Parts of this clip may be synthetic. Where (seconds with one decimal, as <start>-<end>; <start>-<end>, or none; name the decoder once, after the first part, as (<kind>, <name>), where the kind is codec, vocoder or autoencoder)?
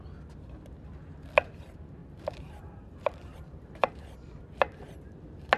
2.0-4.0 (vocoder, BigVGAN v2)